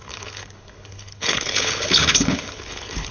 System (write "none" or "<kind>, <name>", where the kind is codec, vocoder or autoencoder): codec, HILCodec